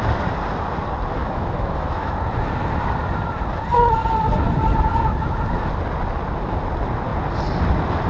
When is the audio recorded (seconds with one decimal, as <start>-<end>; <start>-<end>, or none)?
0.0-1.2; 2.1-8.1